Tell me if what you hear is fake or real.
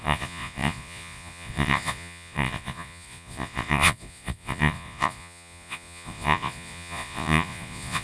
fake